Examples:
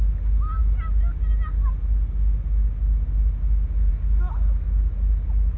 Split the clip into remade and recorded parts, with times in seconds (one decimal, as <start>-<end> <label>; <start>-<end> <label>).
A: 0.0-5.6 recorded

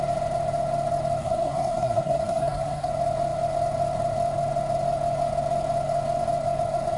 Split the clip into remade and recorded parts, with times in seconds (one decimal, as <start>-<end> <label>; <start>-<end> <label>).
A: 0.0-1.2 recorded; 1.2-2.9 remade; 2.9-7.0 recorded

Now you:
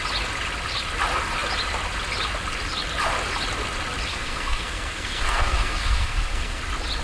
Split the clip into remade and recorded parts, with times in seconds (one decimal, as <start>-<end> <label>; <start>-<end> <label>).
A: 0.0-4.1 recorded; 4.1-6.6 remade; 6.6-7.0 recorded

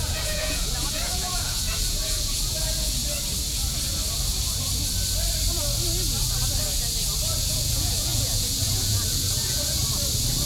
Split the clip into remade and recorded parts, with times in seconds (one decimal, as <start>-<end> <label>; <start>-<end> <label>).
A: 0.0-3.0 remade; 3.0-7.4 recorded; 7.4-9.8 remade; 9.8-10.5 recorded

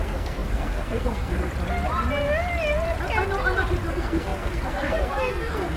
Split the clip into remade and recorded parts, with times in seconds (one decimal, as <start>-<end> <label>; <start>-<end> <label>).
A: 0.0-1.5 remade; 1.5-3.9 recorded; 3.9-5.8 remade